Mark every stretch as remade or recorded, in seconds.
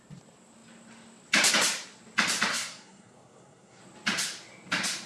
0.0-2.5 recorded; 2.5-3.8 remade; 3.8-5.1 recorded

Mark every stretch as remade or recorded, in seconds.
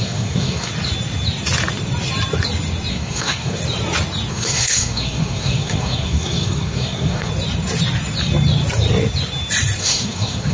0.0-0.7 remade; 0.7-2.9 recorded; 2.9-3.6 remade; 3.6-4.3 recorded; 4.3-7.3 remade; 7.3-9.8 recorded; 9.8-10.5 remade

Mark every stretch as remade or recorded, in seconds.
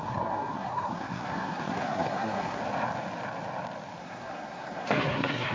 0.0-2.6 remade; 2.6-4.0 recorded; 4.0-5.5 remade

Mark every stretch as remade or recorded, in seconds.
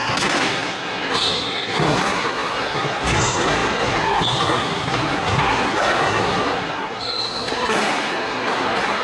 0.0-9.0 remade